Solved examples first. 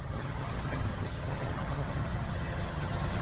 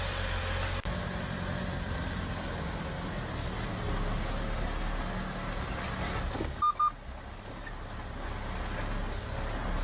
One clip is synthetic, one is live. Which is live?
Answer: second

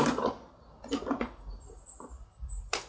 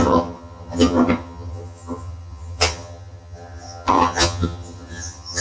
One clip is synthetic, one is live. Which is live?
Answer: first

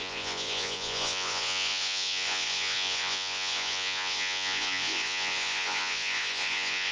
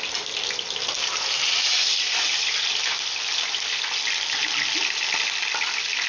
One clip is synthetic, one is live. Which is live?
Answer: second